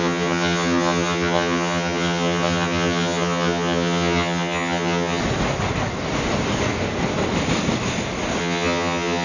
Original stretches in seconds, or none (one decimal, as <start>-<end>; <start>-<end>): 5.2-8.4